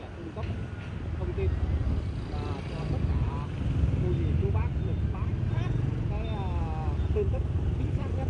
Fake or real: real